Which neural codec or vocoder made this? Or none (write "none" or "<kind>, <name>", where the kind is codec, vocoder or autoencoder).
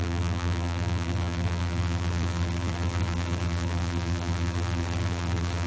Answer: vocoder, BigVGAN v2